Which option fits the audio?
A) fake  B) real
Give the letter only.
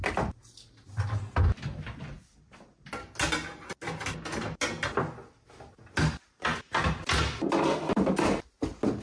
B